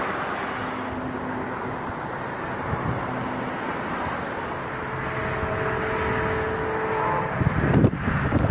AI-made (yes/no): no